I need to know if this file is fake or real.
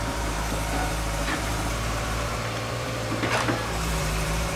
fake